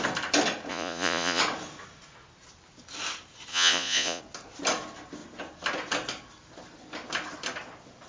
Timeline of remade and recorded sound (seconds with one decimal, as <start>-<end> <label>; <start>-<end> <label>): 0.0-0.7 recorded; 0.7-1.4 remade; 1.4-3.5 recorded; 3.5-4.2 remade; 4.2-8.1 recorded